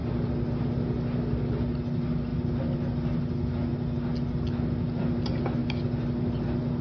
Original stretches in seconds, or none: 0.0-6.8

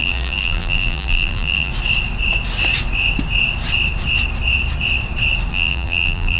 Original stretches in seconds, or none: 1.7-5.5

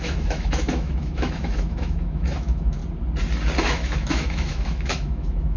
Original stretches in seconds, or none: 2.8-3.6

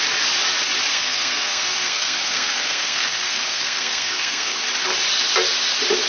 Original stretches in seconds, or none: 0.0-0.9; 4.6-6.1

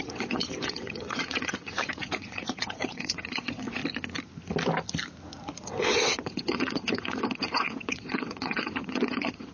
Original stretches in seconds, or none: 3.8-5.6